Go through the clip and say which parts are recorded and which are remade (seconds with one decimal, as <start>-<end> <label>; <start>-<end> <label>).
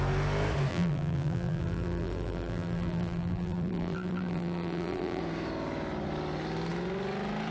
0.0-0.7 recorded; 0.7-5.2 remade; 5.2-7.5 recorded